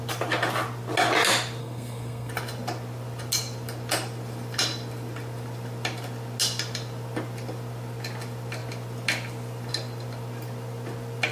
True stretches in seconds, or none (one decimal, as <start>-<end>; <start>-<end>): 0.0-1.6; 2.3-11.3